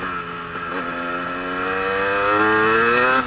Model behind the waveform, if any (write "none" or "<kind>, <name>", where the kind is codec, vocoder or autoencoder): none